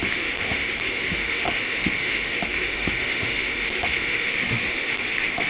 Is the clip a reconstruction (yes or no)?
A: yes